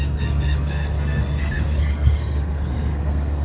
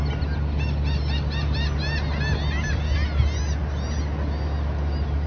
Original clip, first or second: second